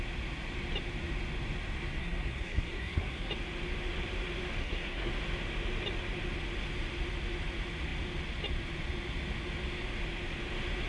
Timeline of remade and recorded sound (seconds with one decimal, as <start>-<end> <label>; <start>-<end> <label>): 0.0-2.0 recorded; 2.0-3.3 remade; 3.3-4.6 recorded; 4.6-5.1 remade; 5.1-10.9 recorded